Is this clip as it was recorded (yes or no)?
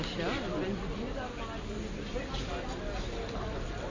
yes